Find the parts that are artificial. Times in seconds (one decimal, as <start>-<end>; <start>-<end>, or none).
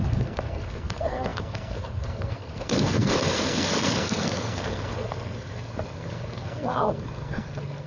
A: 0.0-7.9